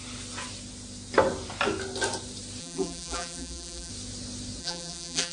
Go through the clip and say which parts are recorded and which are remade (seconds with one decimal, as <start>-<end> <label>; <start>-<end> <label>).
0.0-2.6 recorded; 2.6-3.9 remade; 3.9-4.6 recorded; 4.6-5.3 remade